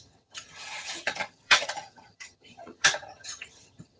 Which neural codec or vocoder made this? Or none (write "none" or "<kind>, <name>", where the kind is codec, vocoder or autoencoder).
vocoder, HiFi-GAN